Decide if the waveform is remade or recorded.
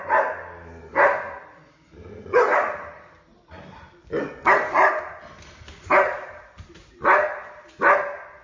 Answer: recorded